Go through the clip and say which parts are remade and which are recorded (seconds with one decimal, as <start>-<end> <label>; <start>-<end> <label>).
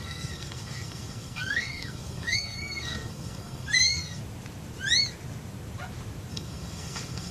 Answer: 0.0-4.2 remade; 4.2-6.3 recorded; 6.3-7.3 remade